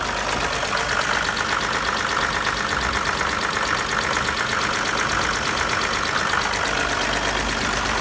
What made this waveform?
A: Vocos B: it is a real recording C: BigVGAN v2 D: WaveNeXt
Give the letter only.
B